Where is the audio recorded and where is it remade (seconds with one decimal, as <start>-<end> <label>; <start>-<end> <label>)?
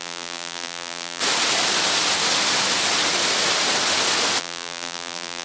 0.0-1.2 remade; 1.2-4.4 recorded; 4.4-5.4 remade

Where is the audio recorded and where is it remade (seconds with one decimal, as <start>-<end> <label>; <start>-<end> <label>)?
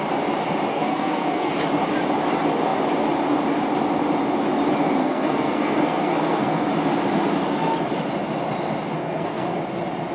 0.0-0.7 recorded; 0.7-1.5 remade; 1.5-5.0 recorded; 5.0-6.7 remade; 6.7-9.0 recorded; 9.0-9.6 remade; 9.6-10.1 recorded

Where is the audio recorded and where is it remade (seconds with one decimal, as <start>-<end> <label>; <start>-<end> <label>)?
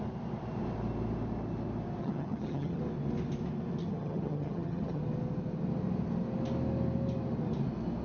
0.0-2.0 recorded; 2.0-2.8 remade; 2.8-3.8 recorded; 3.8-5.0 remade; 5.0-8.0 recorded